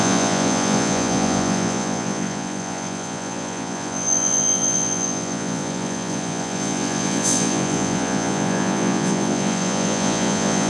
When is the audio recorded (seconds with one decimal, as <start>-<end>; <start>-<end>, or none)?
none